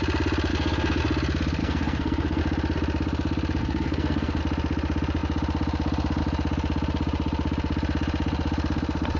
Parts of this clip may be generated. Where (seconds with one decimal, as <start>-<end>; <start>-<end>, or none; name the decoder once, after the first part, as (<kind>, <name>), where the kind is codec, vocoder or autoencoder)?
0.5-1.0 (codec, SNAC); 1.6-2.4; 3.6-4.4